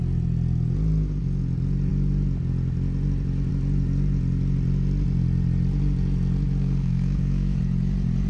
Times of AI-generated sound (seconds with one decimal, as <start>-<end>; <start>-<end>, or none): 6.6-7.6

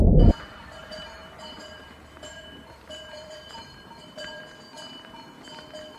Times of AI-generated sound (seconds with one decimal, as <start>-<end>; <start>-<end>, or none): 0.8-4.4

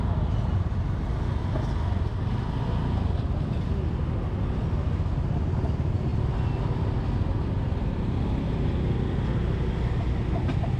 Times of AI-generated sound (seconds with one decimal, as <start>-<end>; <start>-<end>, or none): none

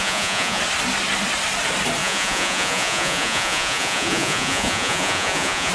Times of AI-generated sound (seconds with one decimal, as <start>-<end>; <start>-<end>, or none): 0.0-0.6; 2.0-5.7

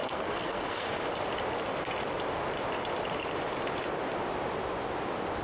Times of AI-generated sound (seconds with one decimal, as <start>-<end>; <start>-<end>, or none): 0.0-0.9